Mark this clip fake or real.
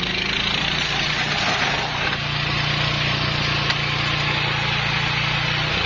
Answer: real